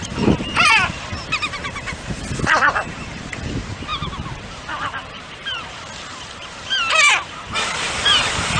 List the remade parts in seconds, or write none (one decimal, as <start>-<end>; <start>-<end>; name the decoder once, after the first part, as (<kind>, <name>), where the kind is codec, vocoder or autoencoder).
0.0-3.9 (vocoder, BigVGAN v2); 4.4-8.6